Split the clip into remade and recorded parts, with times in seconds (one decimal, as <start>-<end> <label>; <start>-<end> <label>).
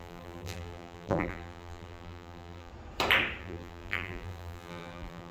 0.0-2.7 remade; 2.7-3.4 recorded; 3.4-5.3 remade